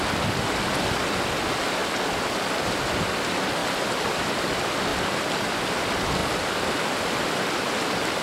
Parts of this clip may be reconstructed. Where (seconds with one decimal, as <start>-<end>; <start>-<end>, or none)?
1.8-3.1; 3.6-4.5; 4.9-5.6; 6.2-6.8